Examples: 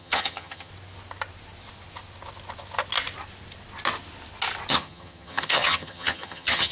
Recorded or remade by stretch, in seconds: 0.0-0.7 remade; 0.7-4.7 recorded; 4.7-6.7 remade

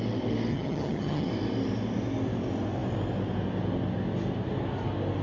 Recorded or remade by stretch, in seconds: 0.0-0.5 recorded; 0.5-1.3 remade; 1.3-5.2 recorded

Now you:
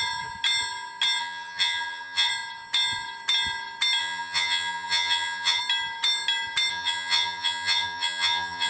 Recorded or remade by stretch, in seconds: 0.0-1.2 recorded; 1.2-2.3 remade; 2.3-4.0 recorded; 4.0-5.6 remade; 5.6-6.7 recorded; 6.7-8.7 remade

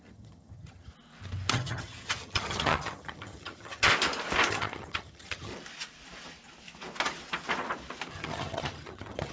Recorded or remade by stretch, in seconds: 0.0-0.9 remade; 0.9-1.5 recorded; 1.5-3.9 remade; 3.9-4.5 recorded; 4.5-5.5 remade; 5.5-8.1 recorded; 8.1-9.3 remade

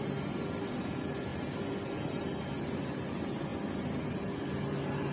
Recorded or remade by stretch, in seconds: 0.0-5.1 recorded